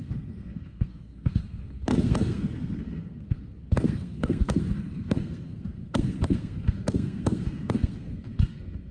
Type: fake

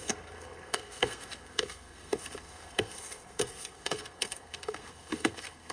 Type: fake